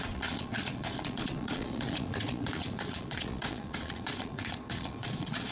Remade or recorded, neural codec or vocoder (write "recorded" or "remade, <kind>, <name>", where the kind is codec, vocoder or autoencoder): remade, vocoder, Vocos